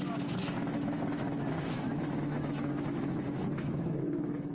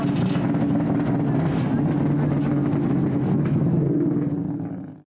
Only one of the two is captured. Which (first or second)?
second